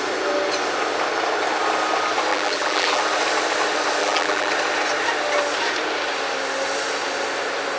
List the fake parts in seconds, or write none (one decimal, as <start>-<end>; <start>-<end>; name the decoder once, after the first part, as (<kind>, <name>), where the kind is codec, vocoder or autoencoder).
2.3-3.0 (vocoder, BigVGAN v2); 4.0-4.5